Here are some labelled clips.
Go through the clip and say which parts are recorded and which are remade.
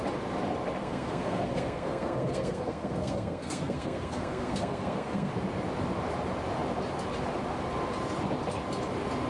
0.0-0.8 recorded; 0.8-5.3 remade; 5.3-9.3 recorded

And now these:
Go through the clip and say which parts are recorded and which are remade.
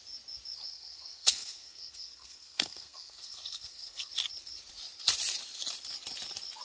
0.0-0.7 recorded; 0.7-4.1 remade; 4.1-6.6 recorded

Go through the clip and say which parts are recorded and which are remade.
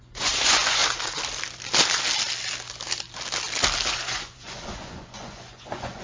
0.0-0.8 remade; 0.8-3.9 recorded; 3.9-6.0 remade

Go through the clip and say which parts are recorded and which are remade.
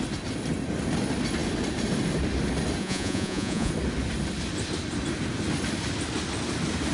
0.0-2.8 recorded; 2.8-3.7 remade; 3.7-6.9 recorded